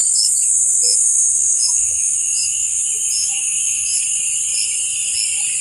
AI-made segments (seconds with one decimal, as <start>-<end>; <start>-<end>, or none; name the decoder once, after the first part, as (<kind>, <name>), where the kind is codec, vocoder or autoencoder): 0.0-0.5 (codec, DAC); 0.9-2.8; 3.2-4.0